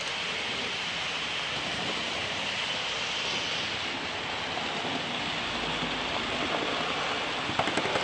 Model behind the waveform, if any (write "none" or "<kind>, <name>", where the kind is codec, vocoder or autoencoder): none